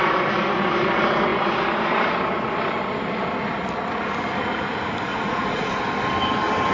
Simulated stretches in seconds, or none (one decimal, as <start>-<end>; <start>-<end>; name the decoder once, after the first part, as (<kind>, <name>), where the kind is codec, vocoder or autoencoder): 5.1-5.8 (vocoder, Vocos)